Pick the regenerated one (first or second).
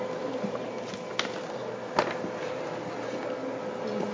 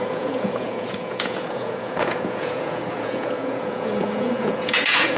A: second